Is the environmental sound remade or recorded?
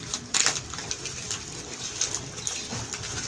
recorded